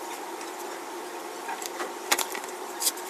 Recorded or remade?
remade